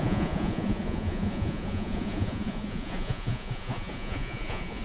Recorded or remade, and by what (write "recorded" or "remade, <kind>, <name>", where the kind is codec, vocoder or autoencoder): remade, vocoder, Vocos